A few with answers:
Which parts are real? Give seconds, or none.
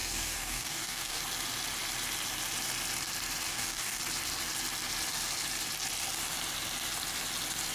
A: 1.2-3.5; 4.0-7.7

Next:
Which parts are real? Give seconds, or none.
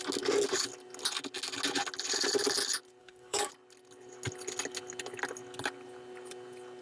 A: 0.0-3.0; 3.5-6.8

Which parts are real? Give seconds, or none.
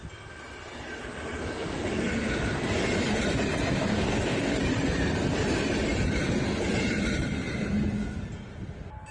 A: 0.0-3.9; 4.6-9.1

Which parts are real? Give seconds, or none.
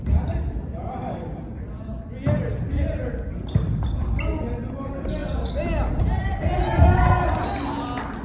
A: 0.0-8.2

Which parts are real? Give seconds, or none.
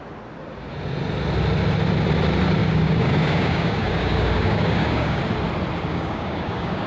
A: 0.0-2.6; 5.2-5.9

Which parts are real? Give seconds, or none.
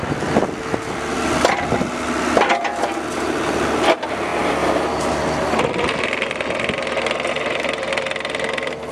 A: 0.0-8.9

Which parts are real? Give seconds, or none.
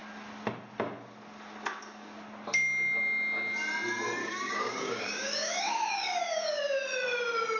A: 0.0-4.2; 6.6-7.6